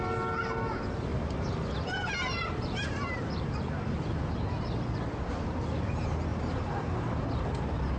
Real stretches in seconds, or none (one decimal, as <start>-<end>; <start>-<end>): 0.0-1.1; 4.7-6.3